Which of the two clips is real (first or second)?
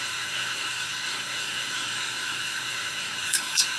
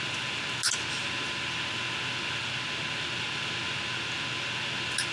second